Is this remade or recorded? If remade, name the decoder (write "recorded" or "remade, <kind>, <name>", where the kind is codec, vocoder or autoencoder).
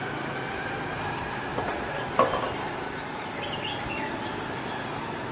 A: recorded